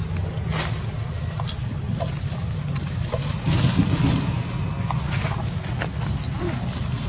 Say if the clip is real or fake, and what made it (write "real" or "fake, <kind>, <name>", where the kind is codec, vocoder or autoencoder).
real